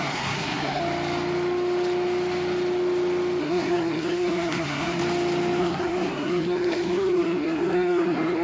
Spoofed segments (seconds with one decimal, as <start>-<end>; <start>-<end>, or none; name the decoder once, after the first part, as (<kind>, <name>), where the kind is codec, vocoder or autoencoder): 0.0-0.8 (codec, SNAC); 3.4-5.0; 5.6-8.4